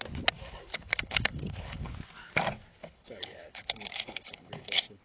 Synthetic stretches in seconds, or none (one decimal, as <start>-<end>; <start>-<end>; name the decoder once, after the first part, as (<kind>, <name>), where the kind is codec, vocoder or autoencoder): 0.7-1.9 (codec, HILCodec); 2.7-5.0